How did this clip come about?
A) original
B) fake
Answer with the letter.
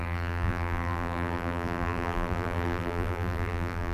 B